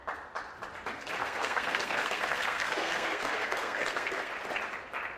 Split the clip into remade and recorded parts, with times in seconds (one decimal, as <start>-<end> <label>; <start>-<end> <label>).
0.0-1.2 recorded; 1.2-4.3 remade; 4.3-5.2 recorded